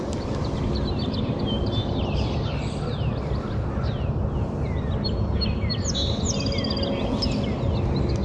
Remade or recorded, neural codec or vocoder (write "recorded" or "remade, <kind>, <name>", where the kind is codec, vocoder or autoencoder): recorded